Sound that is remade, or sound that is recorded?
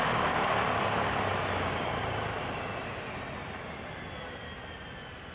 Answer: recorded